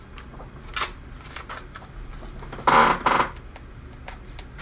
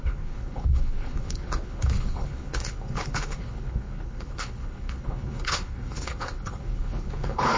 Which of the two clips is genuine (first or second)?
first